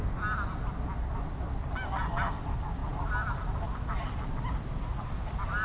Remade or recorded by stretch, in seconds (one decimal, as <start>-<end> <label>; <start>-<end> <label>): 0.0-5.6 recorded